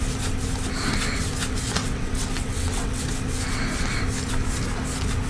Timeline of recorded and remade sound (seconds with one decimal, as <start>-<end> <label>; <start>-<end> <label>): 0.0-1.8 recorded; 1.8-3.0 remade; 3.0-5.3 recorded